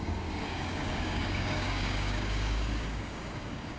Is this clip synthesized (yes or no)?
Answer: yes